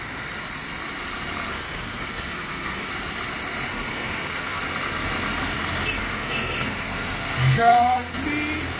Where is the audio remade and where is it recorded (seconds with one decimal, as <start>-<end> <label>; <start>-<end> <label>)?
0.0-1.5 recorded; 1.5-2.9 remade; 2.9-3.7 recorded; 3.7-4.6 remade; 4.6-6.0 recorded; 6.0-8.1 remade; 8.1-8.8 recorded